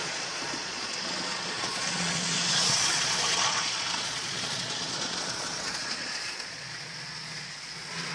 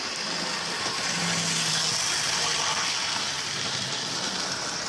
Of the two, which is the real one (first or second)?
second